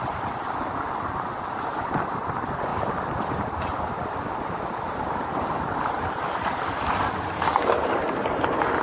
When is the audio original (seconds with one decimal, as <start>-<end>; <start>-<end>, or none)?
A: 0.0-2.7; 4.6-8.8